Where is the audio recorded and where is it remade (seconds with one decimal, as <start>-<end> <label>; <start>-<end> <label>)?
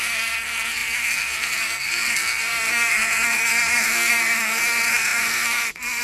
0.0-6.0 remade